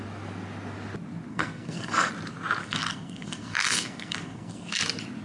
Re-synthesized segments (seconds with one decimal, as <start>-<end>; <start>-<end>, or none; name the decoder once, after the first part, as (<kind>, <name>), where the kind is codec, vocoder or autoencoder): 1.3-2.1 (codec, SNAC); 2.6-4.8